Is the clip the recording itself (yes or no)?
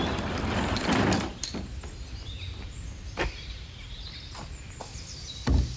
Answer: no